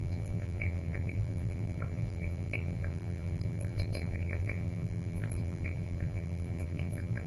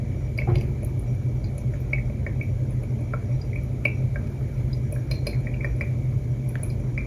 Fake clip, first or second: first